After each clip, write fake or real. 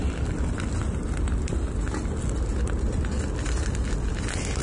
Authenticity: real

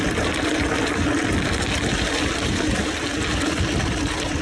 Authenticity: real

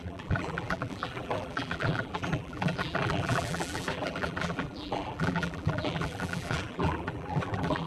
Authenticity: fake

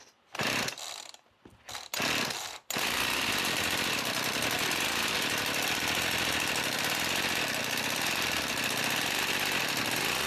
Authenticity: fake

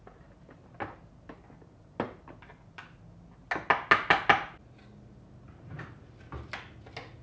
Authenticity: real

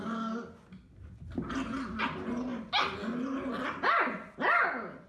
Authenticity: real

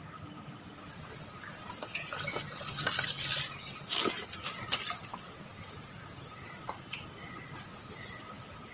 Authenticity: real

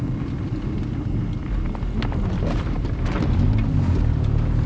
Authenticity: real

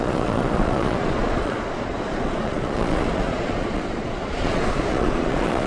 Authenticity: fake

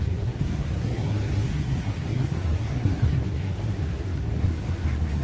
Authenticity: fake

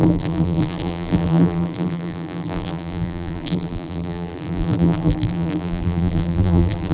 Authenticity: fake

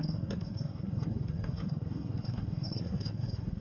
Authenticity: fake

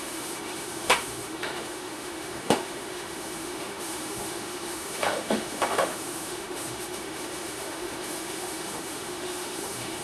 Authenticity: fake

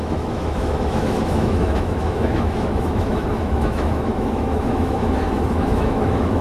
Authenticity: fake